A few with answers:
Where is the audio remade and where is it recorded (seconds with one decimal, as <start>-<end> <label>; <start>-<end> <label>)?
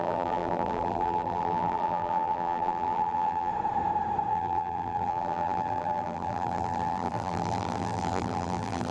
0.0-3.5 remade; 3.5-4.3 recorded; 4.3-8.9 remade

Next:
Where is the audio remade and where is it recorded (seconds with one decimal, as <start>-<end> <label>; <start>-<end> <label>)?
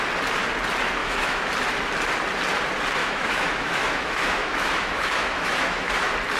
0.0-1.0 recorded; 1.0-1.5 remade; 1.5-3.0 recorded; 3.0-5.9 remade; 5.9-6.4 recorded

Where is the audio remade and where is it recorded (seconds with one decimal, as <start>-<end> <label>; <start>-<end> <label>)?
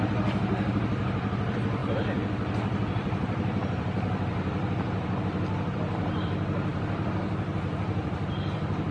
0.0-8.9 remade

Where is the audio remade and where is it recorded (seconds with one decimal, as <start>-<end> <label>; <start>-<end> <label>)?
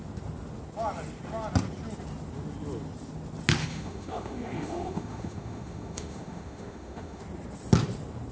0.0-3.6 recorded; 3.6-7.2 remade; 7.2-8.3 recorded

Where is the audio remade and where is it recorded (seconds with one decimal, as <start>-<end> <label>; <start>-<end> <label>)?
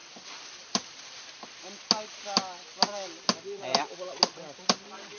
0.0-1.0 remade; 1.0-5.2 recorded